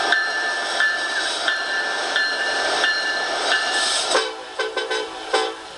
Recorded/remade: remade